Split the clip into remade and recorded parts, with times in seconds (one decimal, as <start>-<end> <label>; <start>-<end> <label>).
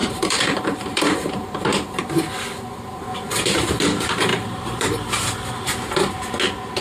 0.0-2.0 remade; 2.0-3.3 recorded; 3.3-3.8 remade; 3.8-4.3 recorded; 4.3-5.5 remade; 5.5-6.8 recorded